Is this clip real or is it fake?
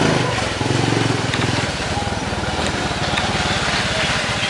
real